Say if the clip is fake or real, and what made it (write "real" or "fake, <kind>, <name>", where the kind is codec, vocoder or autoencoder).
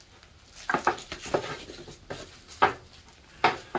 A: real